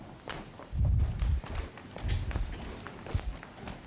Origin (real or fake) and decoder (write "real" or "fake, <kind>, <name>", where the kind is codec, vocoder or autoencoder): real